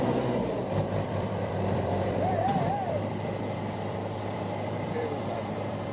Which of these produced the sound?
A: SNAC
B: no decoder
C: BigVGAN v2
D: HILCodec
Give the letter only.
C